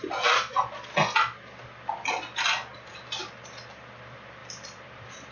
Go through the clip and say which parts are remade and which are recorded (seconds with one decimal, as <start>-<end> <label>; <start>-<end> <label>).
0.0-4.4 recorded; 4.4-5.3 remade